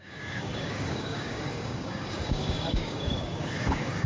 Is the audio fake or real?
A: fake